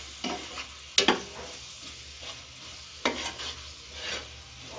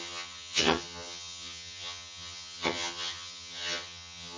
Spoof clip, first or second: second